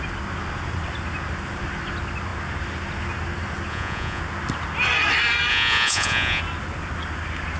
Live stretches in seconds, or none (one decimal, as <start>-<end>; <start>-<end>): 0.0-3.7; 4.2-5.5; 6.4-7.6